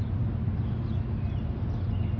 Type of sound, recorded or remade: recorded